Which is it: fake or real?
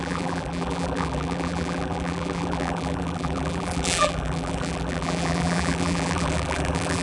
fake